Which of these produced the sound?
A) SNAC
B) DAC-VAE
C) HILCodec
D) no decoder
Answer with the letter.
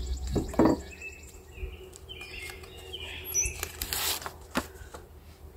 D